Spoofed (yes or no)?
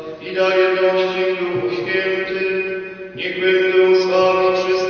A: no